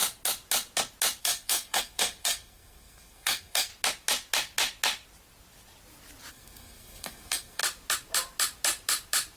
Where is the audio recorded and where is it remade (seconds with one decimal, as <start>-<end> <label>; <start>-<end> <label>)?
0.0-1.2 recorded; 1.2-3.7 remade; 3.7-6.3 recorded; 6.3-7.6 remade; 7.6-9.4 recorded